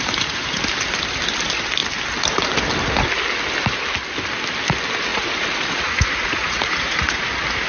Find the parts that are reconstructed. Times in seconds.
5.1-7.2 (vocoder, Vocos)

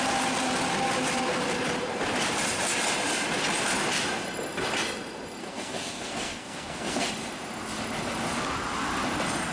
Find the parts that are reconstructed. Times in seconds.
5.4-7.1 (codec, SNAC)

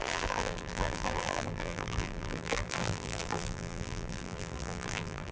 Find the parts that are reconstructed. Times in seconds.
0.0-5.3 (vocoder, BigVGAN v2)

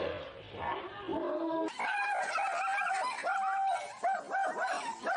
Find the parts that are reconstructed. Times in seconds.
none

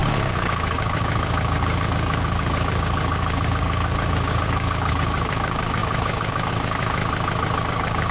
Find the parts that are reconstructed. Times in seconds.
0.0-7.0 (codec, DAC); 7.6-8.1

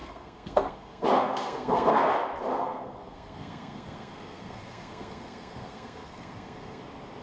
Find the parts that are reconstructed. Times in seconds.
0.0-2.1 (codec, SNAC); 2.5-6.8

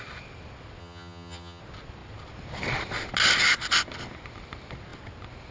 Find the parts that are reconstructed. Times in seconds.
0.8-1.6 (vocoder, HiFi-GAN)